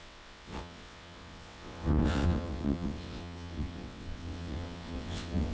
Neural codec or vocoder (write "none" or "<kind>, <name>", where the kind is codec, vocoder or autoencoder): vocoder, WaveNeXt